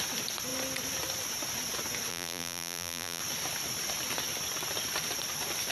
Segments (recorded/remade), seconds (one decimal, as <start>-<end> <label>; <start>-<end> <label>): 0.0-2.1 recorded; 2.1-3.2 remade; 3.2-5.7 recorded